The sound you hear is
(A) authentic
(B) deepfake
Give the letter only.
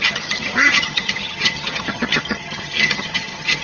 B